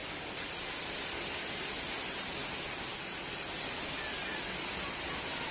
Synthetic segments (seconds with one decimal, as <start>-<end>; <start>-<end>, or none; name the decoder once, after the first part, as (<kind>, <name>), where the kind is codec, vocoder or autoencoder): none